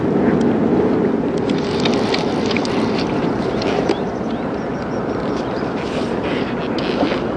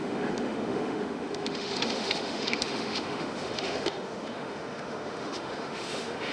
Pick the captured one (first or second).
first